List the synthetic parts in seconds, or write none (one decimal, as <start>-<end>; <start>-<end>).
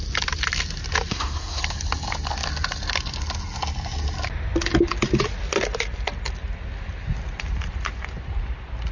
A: 1.1-1.6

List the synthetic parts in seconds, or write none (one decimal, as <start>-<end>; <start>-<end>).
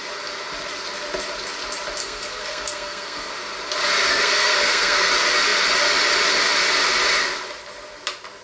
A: 2.0-3.3; 4.1-5.1